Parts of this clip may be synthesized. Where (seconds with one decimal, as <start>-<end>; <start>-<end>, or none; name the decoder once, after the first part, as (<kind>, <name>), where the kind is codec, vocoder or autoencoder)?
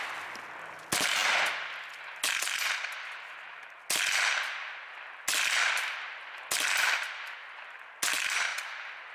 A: none